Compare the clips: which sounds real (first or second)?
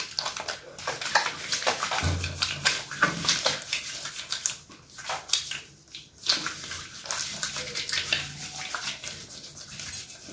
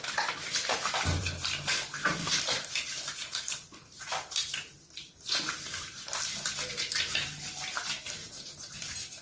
first